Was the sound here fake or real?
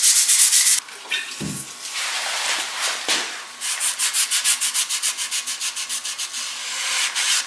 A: real